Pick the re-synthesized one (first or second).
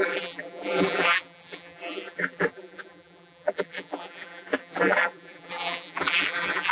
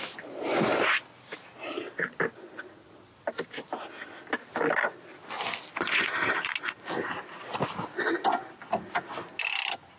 first